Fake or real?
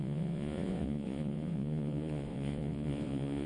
fake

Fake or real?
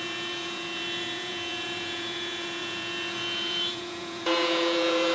fake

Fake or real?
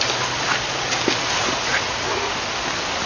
real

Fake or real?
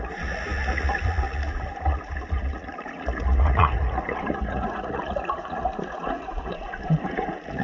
fake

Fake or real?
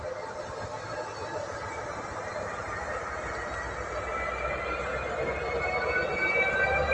real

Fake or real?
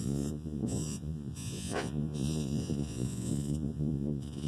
fake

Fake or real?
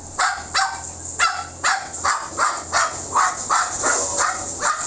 real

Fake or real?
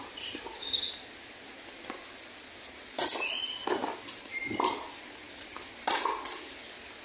real